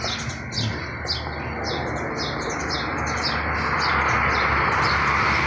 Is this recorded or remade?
recorded